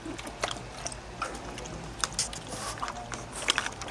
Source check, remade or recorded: recorded